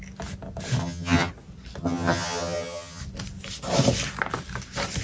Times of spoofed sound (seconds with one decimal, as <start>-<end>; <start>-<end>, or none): 0.8-1.3; 1.8-3.0